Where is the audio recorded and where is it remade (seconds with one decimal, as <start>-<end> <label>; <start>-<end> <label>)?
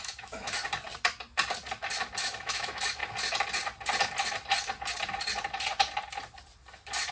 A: 0.0-0.6 remade; 0.6-2.2 recorded; 2.2-3.0 remade; 3.0-7.1 recorded